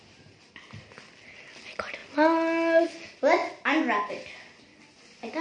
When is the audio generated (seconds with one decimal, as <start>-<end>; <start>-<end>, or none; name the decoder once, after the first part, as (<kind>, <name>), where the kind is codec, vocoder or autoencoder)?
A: none